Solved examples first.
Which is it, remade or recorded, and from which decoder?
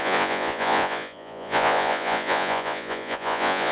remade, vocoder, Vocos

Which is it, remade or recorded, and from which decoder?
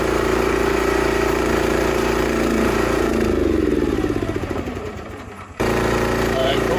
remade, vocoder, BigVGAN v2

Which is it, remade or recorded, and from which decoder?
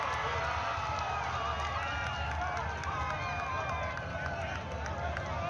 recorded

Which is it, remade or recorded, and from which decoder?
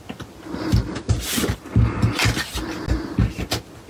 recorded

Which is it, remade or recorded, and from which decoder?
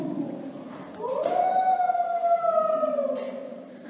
remade, vocoder, BigVGAN v2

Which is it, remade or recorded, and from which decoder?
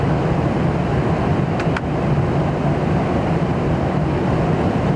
remade, vocoder, BigVGAN v2